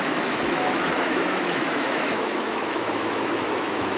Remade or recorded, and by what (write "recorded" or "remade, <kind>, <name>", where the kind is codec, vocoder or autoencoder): remade, autoencoder, DAC-VAE